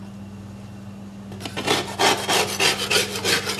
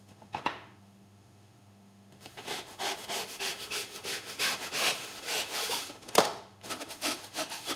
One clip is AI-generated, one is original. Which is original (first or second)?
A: first